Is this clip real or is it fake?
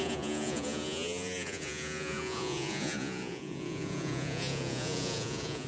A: fake